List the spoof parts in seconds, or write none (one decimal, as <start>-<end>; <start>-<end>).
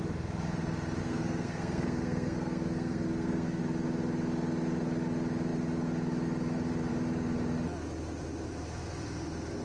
1.0-3.6